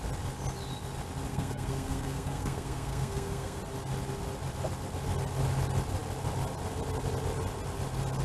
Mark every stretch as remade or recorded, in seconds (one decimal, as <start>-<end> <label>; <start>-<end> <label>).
0.0-1.3 recorded; 1.3-3.6 remade; 3.6-8.2 recorded